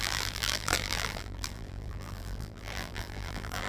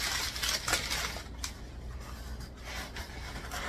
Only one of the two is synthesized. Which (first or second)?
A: first